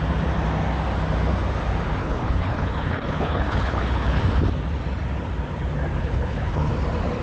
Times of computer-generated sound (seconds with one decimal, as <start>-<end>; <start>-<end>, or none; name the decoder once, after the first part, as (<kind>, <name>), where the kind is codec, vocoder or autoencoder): 2.0-4.2 (codec, HILCodec); 6.0-6.7